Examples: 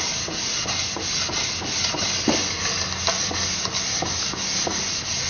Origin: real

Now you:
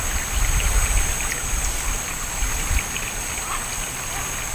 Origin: real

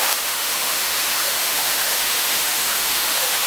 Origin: fake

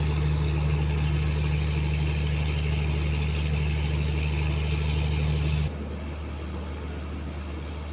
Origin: real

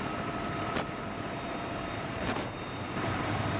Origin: fake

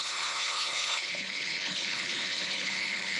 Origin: fake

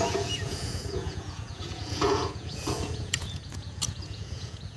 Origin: fake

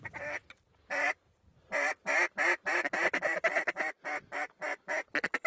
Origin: fake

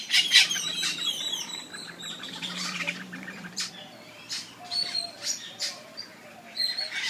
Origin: fake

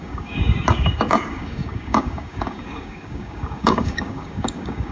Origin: fake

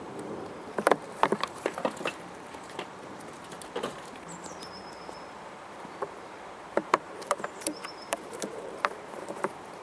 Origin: fake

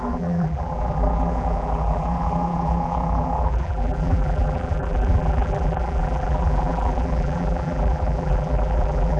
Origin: fake